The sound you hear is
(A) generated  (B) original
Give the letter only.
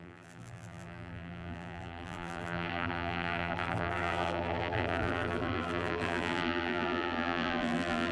A